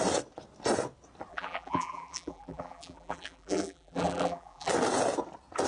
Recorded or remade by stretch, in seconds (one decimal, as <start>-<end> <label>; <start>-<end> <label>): 0.0-1.3 recorded; 1.3-4.7 remade; 4.7-5.7 recorded